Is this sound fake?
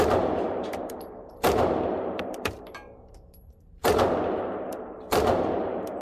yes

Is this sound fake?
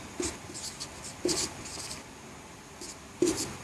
no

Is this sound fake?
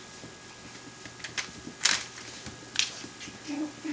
no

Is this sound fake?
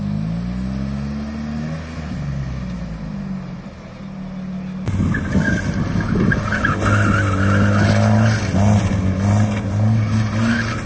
no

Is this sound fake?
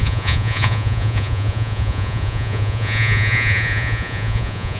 yes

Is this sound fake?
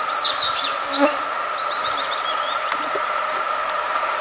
yes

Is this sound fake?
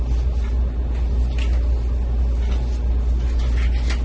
no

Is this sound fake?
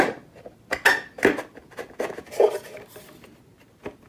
no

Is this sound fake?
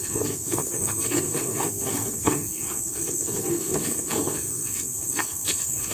yes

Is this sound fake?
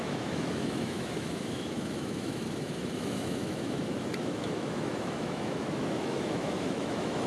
yes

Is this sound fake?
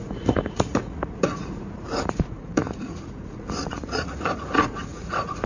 yes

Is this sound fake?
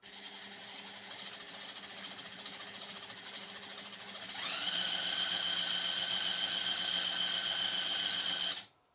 no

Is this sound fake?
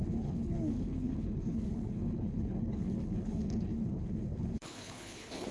yes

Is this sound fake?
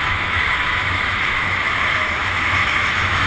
yes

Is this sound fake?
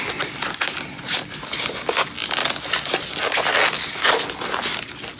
no